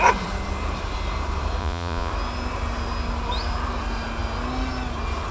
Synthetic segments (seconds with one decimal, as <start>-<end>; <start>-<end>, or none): 1.6-2.1